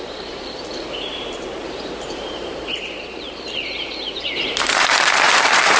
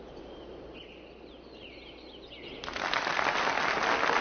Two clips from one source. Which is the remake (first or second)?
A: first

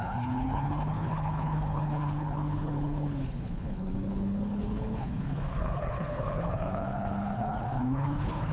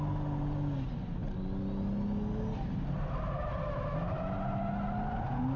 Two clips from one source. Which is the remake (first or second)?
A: first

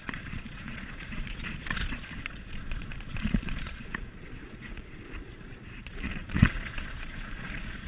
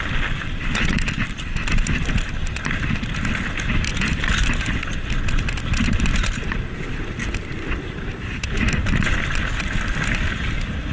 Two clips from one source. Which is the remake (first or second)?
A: first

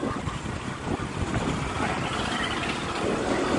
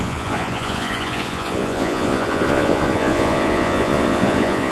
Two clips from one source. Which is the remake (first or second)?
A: second